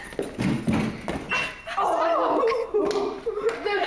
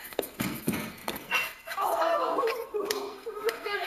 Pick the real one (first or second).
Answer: first